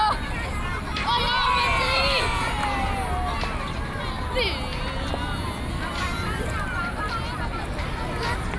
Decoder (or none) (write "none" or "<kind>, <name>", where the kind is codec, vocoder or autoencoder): none